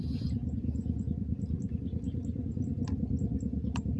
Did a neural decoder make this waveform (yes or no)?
no